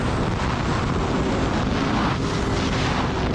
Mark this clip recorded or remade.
recorded